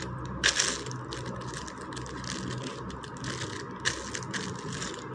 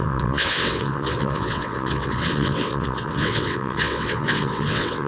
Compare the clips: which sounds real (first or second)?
first